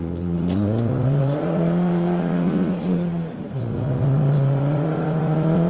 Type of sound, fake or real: fake